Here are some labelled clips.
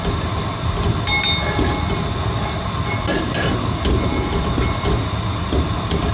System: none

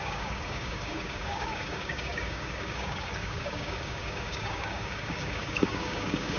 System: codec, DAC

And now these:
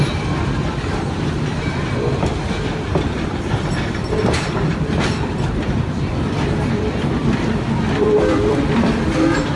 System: vocoder, BigVGAN v2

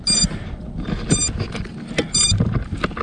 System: none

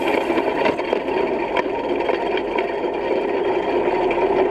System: none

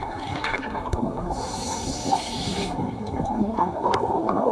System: codec, SNAC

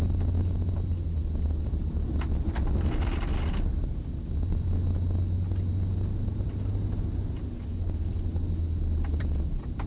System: vocoder, BigVGAN v2